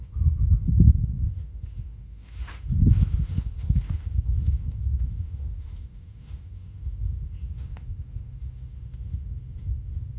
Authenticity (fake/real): fake